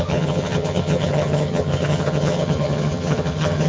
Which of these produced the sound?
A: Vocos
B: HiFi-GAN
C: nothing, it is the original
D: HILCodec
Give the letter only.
B